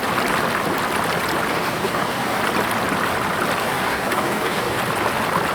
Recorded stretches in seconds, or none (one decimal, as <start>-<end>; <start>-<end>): 0.0-1.5; 2.4-3.6; 4.8-5.5